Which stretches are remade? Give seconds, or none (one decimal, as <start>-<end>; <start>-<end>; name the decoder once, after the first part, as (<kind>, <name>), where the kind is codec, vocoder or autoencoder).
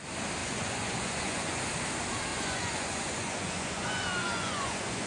0.4-1.6 (vocoder, Vocos); 2.3-5.1